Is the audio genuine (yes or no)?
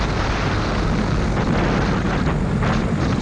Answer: yes